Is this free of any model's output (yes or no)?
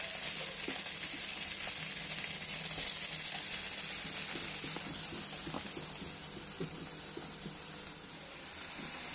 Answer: yes